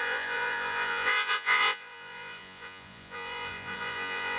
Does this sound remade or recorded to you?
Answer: remade